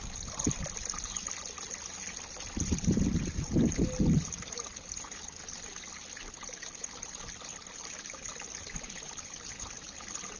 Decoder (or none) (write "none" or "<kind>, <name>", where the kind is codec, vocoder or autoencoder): none